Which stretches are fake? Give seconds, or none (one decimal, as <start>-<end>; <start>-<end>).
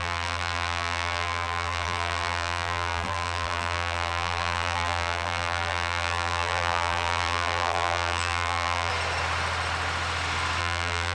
0.0-8.9; 10.6-11.1